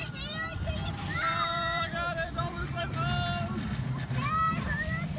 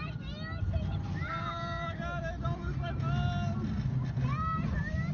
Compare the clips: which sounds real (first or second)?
second